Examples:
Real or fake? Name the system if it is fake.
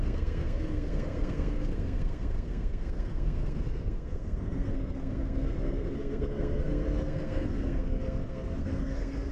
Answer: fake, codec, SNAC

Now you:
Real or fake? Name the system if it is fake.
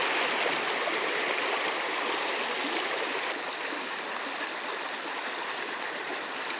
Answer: real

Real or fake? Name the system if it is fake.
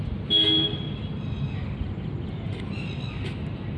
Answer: real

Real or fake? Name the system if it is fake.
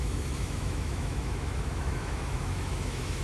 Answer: fake, autoencoder, DAC-VAE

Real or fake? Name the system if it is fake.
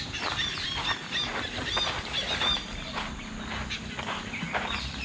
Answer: real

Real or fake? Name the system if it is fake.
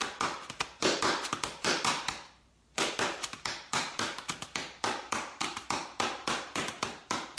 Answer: fake, vocoder, BigVGAN v2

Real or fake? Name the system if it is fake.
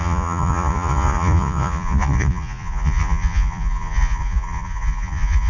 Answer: fake, vocoder, Vocos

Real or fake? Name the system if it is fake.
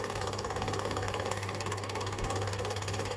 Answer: fake, codec, DAC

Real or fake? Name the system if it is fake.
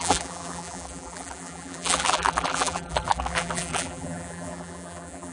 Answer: fake, vocoder, BigVGAN v2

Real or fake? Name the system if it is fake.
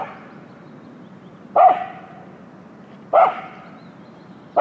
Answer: real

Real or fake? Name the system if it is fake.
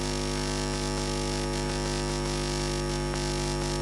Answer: real